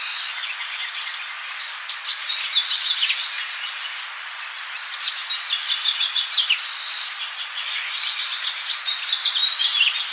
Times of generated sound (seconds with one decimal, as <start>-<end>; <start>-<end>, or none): 2.2-3.1

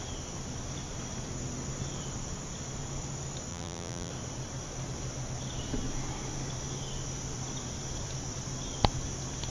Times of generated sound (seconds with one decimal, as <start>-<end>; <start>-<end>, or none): 3.5-4.1

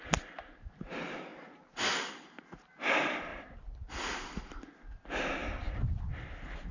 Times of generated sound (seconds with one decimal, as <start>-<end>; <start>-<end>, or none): 3.3-4.4; 5.4-5.9

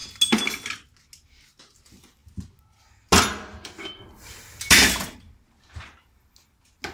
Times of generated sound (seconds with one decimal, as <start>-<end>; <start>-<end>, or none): none

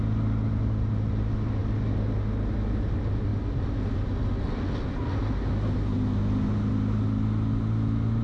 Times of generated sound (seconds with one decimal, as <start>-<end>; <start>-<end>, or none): none